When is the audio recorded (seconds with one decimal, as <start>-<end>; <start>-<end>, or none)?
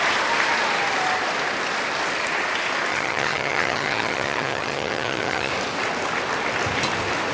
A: 0.0-2.9; 5.5-7.3